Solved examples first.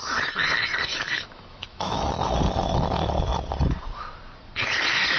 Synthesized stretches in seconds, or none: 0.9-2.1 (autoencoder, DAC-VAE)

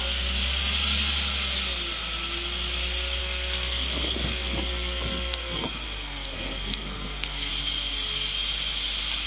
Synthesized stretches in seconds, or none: 3.2-7.5 (codec, SNAC)